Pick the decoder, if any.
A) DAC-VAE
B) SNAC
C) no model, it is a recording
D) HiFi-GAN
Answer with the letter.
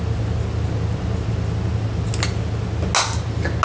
C